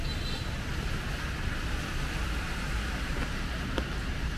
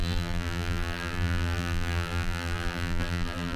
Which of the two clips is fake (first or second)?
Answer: second